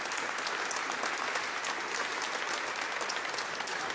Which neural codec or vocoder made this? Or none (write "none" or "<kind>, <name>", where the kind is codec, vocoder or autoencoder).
none